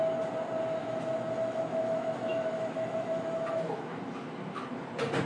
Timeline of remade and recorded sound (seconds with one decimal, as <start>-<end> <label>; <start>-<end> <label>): 0.0-0.8 recorded; 0.8-4.0 remade; 4.0-5.3 recorded